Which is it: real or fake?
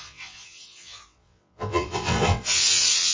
fake